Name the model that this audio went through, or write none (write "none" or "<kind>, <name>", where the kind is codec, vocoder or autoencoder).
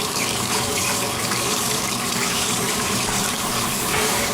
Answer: codec, DAC